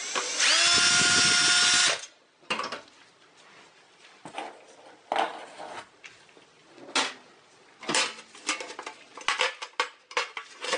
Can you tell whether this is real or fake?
real